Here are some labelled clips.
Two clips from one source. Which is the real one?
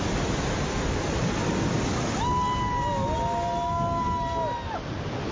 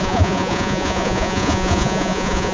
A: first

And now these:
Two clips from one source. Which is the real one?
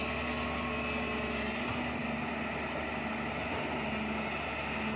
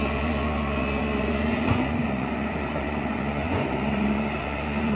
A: first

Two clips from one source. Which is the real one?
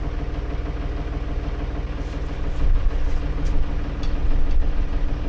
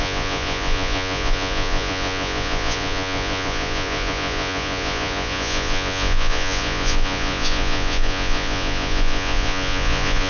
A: first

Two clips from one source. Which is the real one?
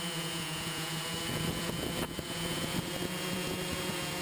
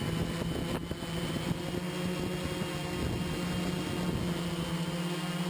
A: second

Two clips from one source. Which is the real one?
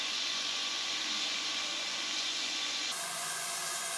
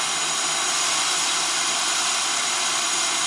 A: second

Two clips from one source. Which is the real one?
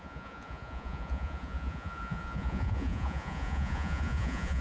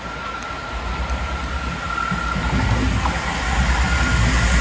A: second